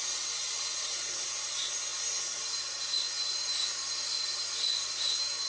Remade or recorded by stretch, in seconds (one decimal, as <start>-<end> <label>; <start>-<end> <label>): 0.0-5.5 recorded